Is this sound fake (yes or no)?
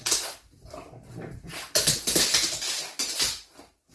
no